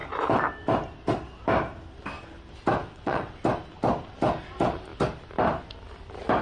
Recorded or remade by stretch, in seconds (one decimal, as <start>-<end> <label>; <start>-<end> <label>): 0.0-2.8 recorded; 2.8-3.4 remade; 3.4-6.4 recorded